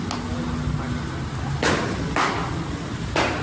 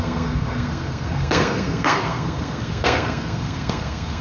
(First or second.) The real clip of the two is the first